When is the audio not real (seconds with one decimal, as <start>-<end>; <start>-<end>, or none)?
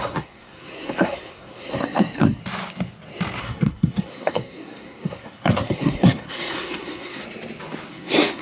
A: 0.0-2.4; 3.4-7.2; 7.9-8.4